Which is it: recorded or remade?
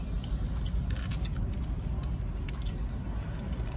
recorded